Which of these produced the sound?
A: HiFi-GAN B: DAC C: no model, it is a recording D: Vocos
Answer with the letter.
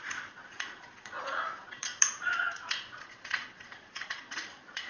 D